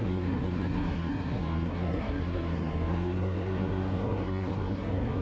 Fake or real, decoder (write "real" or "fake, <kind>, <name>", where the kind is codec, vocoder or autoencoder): fake, codec, SNAC